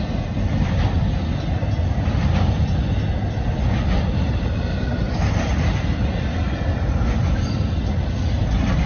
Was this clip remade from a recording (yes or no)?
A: no